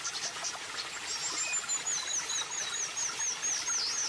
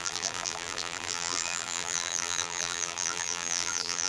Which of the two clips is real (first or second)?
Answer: first